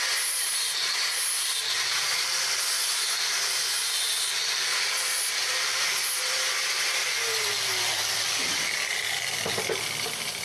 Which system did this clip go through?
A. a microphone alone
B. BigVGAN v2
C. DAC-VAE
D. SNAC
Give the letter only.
B